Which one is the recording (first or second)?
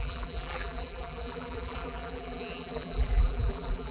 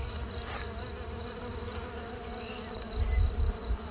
second